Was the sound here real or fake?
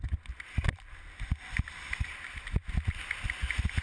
real